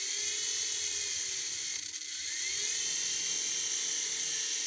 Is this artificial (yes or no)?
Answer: no